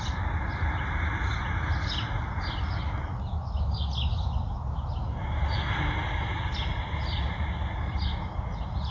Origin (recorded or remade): recorded